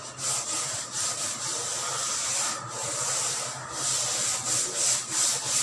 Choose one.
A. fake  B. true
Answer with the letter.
B